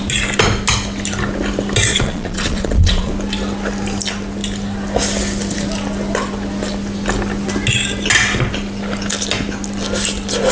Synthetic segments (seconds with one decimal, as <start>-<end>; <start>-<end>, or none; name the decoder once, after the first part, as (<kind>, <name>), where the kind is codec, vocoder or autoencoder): 1.9-3.1 (vocoder, Vocos)